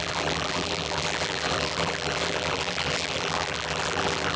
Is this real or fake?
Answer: fake